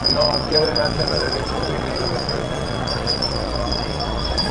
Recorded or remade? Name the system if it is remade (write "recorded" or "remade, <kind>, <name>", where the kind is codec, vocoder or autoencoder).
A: remade, vocoder, Vocos